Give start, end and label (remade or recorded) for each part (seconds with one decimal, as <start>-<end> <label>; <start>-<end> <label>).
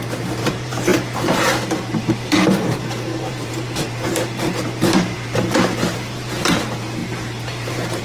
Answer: 0.0-8.0 remade